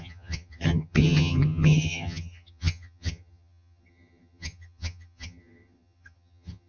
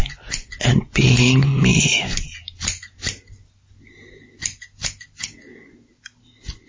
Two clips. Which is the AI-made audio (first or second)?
first